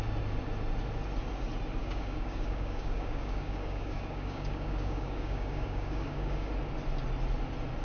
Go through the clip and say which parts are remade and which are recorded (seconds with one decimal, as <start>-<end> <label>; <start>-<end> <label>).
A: 0.0-1.8 recorded; 1.8-6.5 remade; 6.5-7.8 recorded